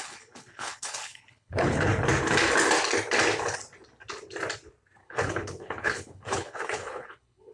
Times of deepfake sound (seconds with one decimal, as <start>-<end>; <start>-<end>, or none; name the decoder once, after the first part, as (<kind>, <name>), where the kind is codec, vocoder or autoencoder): 0.0-1.9 (codec, HILCodec); 5.0-7.5